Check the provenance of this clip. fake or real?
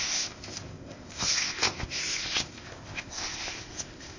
fake